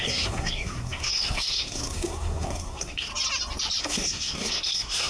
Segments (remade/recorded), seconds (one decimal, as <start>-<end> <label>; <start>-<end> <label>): 0.0-3.1 remade; 3.1-3.8 recorded; 3.8-5.1 remade